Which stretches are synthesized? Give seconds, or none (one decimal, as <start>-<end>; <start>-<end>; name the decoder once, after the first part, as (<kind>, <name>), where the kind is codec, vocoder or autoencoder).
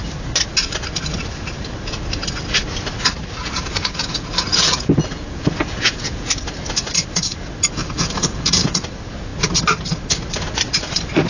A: 3.4-6.4 (vocoder, Vocos); 7.8-8.8